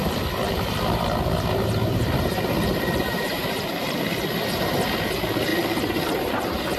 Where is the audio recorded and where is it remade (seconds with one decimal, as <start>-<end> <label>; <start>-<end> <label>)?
0.0-4.1 remade; 4.1-5.5 recorded; 5.5-6.8 remade